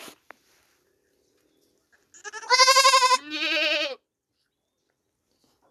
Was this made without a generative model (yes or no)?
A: yes